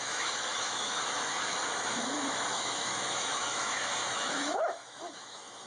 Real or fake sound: fake